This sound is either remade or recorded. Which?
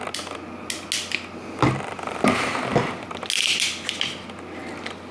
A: recorded